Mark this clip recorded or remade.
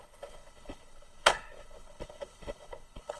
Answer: remade